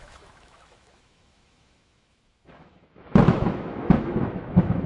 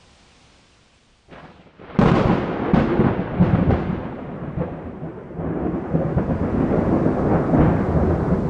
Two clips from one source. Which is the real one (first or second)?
second